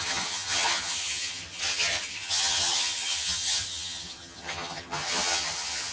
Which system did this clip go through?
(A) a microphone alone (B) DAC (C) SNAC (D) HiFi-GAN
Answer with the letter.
D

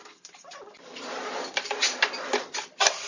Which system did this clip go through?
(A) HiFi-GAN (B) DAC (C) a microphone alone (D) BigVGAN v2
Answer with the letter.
C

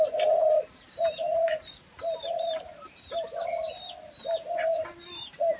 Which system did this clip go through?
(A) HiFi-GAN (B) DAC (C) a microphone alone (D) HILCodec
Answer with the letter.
C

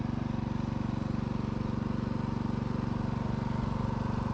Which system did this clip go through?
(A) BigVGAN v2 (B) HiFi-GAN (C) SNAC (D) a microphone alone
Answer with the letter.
D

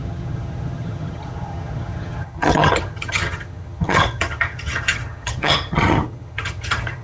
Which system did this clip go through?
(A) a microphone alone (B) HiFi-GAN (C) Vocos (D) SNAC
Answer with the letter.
B